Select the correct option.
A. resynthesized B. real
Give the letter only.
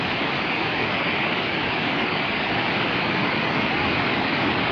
A